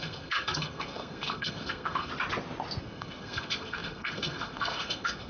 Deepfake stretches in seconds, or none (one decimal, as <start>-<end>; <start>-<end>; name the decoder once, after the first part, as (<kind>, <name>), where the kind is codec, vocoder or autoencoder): 0.0-2.1 (codec, SNAC); 2.8-5.3

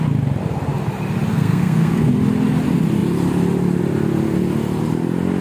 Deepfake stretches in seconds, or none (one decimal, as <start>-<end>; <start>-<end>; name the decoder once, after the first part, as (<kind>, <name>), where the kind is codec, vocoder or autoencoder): 1.3-2.1 (codec, SNAC)

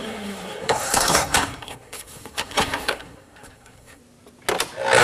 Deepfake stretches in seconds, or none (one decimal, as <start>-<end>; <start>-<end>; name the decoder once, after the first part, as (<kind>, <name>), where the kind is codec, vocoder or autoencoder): 0.0-4.0 (codec, SNAC)

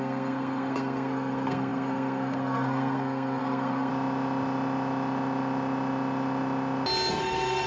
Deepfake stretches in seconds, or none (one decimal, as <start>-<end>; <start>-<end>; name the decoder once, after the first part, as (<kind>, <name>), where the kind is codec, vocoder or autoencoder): 0.0-3.9 (codec, SNAC); 7.1-7.7

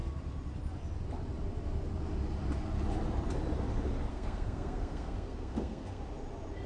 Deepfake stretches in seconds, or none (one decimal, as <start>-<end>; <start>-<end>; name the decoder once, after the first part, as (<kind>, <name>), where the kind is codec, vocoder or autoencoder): 4.1-6.0 (codec, SNAC)

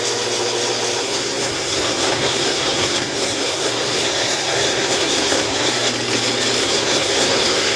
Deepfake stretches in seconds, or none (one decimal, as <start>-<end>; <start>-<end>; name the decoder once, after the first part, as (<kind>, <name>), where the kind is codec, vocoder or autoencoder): 1.0-5.7 (codec, SNAC); 6.6-7.8

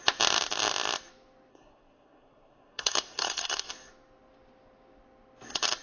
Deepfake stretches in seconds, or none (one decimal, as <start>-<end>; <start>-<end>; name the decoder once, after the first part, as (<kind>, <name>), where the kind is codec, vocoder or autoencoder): 1.5-3.7 (codec, SNAC)